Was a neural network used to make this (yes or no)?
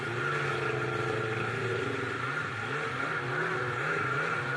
no